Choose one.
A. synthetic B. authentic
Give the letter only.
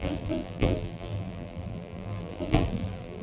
A